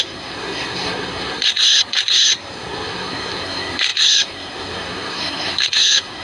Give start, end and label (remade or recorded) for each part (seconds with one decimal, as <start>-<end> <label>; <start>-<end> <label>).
0.0-6.2 remade